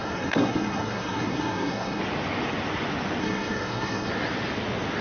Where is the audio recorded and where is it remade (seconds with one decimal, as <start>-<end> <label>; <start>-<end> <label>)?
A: 0.0-2.0 remade; 2.0-3.2 recorded; 3.2-4.1 remade; 4.1-5.0 recorded